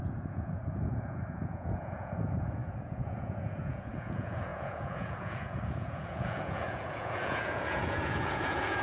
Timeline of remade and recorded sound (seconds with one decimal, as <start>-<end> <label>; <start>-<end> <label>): 0.0-8.8 remade